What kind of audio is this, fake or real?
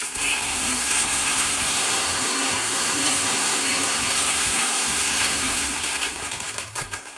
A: fake